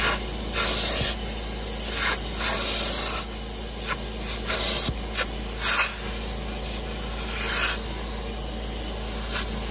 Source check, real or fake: real